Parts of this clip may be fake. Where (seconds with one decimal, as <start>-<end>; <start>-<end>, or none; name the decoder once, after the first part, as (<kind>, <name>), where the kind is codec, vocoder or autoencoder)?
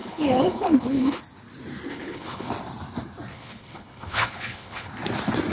0.0-1.2 (codec, HILCodec); 1.9-2.5; 3.3-4.9